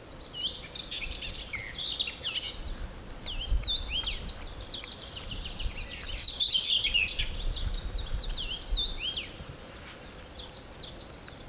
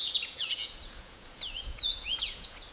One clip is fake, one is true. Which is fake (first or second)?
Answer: second